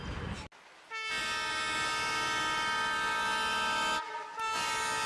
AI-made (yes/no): no